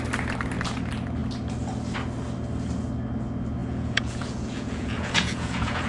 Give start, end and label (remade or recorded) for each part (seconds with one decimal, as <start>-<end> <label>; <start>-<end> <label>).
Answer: 0.0-3.6 recorded; 3.6-5.9 remade

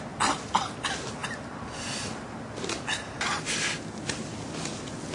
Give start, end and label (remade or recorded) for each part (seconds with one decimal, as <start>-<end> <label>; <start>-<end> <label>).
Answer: 0.0-5.1 recorded

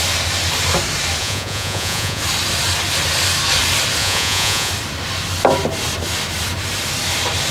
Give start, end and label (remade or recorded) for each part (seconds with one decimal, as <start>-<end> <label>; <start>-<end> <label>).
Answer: 0.0-1.2 recorded; 1.2-2.2 remade; 2.2-4.0 recorded; 4.0-4.7 remade; 4.7-7.5 recorded

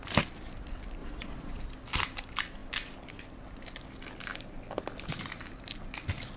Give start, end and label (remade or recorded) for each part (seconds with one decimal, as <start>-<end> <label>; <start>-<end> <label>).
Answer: 0.0-1.0 recorded; 1.0-1.6 remade; 1.6-6.4 recorded

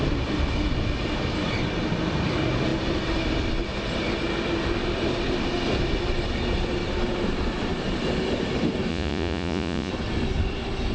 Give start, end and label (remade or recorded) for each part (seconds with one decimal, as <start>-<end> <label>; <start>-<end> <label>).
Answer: 0.0-8.9 recorded; 8.9-9.9 remade; 9.9-10.9 recorded

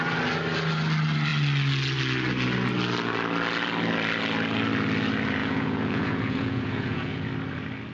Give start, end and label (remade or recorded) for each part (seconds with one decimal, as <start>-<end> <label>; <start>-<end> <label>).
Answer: 0.0-5.4 recorded; 5.4-7.2 remade; 7.2-7.9 recorded